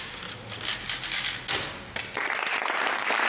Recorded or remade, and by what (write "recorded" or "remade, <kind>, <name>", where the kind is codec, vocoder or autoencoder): recorded